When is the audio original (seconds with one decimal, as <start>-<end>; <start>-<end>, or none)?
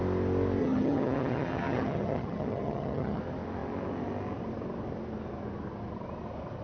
0.0-0.6; 3.2-6.6